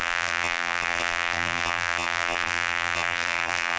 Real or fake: fake